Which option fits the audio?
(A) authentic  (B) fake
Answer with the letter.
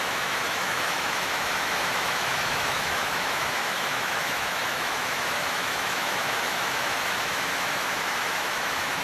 B